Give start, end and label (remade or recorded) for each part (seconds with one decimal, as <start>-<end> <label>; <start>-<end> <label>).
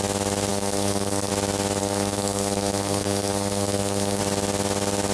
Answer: 0.0-0.5 recorded; 0.5-1.3 remade; 1.3-1.8 recorded; 1.8-4.2 remade; 4.2-5.1 recorded